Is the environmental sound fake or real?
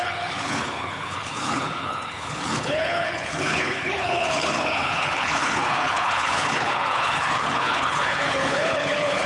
fake